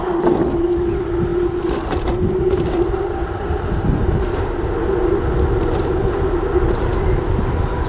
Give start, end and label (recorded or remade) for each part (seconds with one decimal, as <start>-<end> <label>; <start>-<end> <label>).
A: 0.0-1.3 recorded; 1.3-5.2 remade; 5.2-7.9 recorded